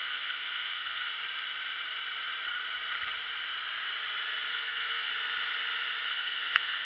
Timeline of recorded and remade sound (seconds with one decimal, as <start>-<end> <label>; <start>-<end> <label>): 0.0-1.1 remade; 1.1-4.5 recorded; 4.5-5.1 remade; 5.1-6.1 recorded; 6.1-6.8 remade

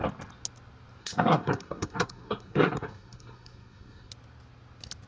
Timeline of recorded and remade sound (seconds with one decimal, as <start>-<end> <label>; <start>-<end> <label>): 0.0-1.0 recorded; 1.0-4.1 remade; 4.1-5.1 recorded